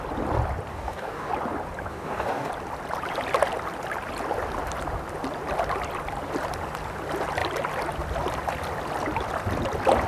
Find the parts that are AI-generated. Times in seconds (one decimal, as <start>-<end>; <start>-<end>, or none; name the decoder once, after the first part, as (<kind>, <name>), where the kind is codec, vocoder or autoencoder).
0.7-1.3 (codec, DAC); 1.9-2.5